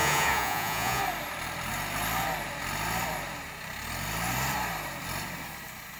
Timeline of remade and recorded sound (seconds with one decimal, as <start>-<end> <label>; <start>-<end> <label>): 0.0-1.0 remade; 1.0-6.0 recorded